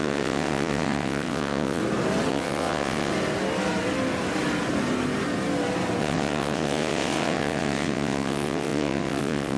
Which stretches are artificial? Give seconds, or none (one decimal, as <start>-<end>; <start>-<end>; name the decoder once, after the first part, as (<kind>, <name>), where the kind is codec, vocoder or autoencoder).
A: 0.0-1.8 (vocoder, WaveNeXt); 2.3-3.1; 6.0-9.6